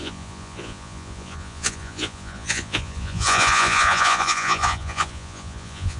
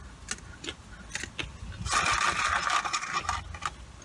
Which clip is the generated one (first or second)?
first